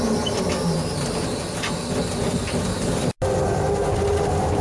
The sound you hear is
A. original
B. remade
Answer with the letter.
A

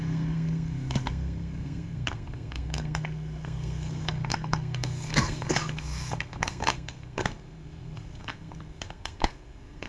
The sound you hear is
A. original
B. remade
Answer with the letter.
B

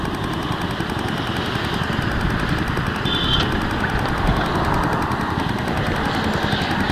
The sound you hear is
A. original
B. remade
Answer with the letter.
A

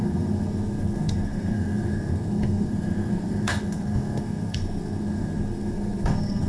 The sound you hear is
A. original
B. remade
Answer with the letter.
B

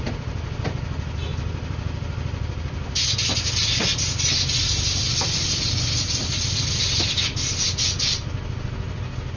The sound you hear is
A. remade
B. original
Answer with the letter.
B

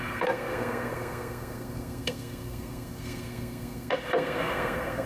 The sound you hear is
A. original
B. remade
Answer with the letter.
B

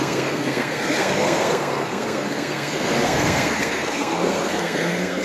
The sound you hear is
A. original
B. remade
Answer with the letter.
B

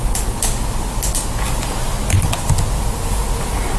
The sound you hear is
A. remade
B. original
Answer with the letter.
B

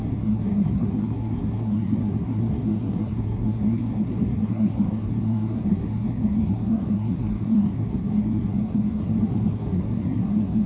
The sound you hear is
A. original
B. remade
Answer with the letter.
B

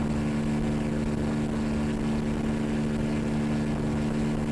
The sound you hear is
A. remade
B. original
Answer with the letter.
B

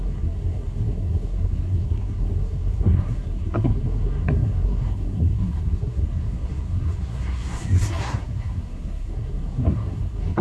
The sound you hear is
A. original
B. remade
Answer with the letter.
B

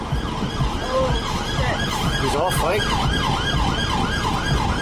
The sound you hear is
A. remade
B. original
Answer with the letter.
B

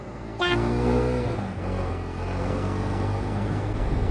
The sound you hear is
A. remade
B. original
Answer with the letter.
A